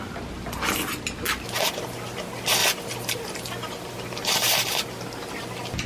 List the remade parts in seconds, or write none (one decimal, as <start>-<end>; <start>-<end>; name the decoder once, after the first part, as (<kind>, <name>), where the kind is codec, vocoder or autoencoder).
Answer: 2.6-4.3 (vocoder, BigVGAN v2)